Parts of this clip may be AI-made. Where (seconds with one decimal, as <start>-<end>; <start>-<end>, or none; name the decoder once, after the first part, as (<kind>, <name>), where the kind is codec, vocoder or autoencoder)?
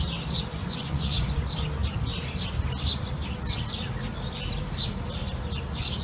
0.6-1.4 (vocoder, Vocos)